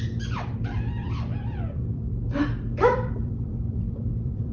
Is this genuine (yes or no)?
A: no